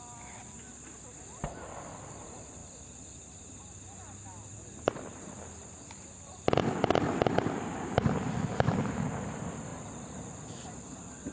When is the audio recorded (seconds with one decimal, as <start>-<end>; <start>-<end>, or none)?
0.0-11.3